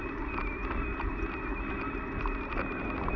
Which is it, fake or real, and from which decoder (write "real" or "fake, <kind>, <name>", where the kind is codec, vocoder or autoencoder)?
real